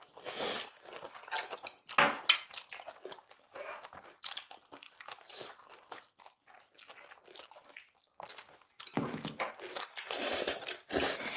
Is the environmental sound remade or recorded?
recorded